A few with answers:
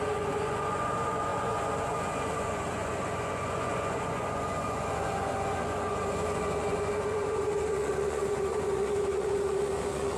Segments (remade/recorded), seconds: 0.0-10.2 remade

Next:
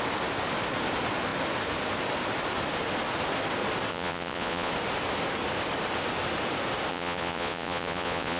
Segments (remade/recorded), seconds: 0.0-3.9 recorded; 3.9-4.7 remade; 4.7-6.9 recorded; 6.9-8.4 remade

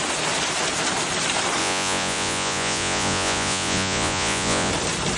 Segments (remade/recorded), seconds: 0.0-1.6 recorded; 1.6-4.7 remade; 4.7-5.2 recorded